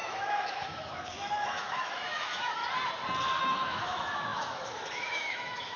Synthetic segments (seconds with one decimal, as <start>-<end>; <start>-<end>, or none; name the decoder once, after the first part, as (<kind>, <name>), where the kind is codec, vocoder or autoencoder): 0.0-2.6 (autoencoder, DAC-VAE); 3.4-5.8